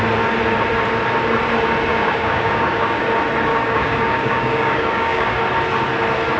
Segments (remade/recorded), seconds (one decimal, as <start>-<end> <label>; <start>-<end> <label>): 0.0-1.9 recorded; 1.9-3.0 remade; 3.0-3.5 recorded; 3.5-5.4 remade; 5.4-6.4 recorded